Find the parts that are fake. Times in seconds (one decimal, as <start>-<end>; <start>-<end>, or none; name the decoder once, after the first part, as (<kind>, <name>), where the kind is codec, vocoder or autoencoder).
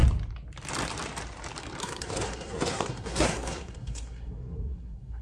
1.8-5.2 (codec, SNAC)